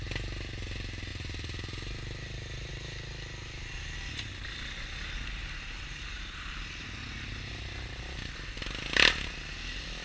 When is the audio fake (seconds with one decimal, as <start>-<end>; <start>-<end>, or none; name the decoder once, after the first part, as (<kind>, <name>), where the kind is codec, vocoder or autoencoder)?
5.4-8.5 (vocoder, BigVGAN v2)